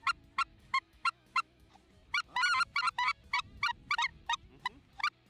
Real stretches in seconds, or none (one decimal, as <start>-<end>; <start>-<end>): 0.0-0.5; 1.7-5.3